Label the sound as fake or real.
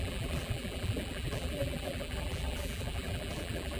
fake